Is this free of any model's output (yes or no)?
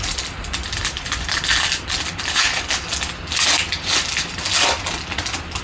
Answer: yes